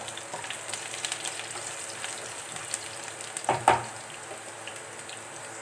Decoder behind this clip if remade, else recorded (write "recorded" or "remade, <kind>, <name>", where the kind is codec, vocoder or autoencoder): remade, vocoder, BigVGAN v2